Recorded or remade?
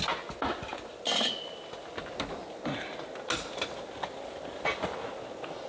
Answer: recorded